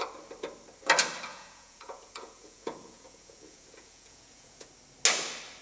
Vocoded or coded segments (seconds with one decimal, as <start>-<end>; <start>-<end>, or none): 1.3-4.7